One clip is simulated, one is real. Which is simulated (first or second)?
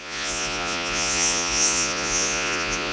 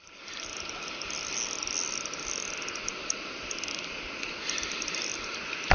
first